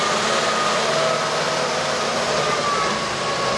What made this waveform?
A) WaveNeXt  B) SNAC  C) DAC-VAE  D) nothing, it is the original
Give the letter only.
D